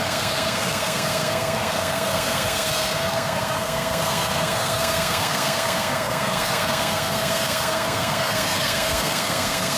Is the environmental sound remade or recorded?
remade